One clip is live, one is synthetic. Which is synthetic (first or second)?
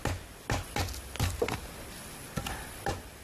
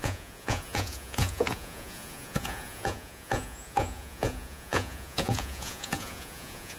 second